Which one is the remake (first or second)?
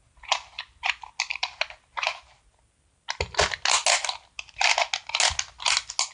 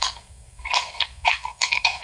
second